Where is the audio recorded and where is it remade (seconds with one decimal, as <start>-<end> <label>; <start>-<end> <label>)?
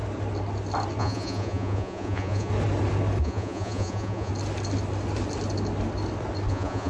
0.0-1.0 recorded; 1.0-2.5 remade; 2.5-3.2 recorded; 3.2-4.3 remade; 4.3-6.5 recorded; 6.5-6.9 remade